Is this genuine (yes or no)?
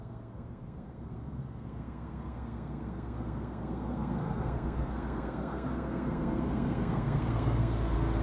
no